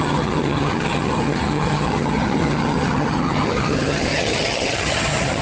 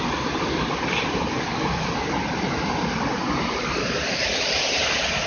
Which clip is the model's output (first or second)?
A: first